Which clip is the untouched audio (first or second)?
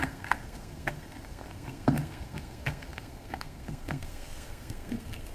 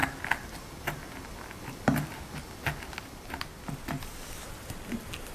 second